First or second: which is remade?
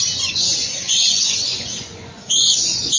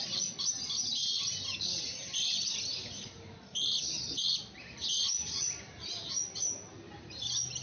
first